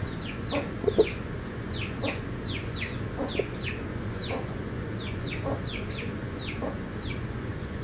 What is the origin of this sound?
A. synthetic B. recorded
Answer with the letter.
A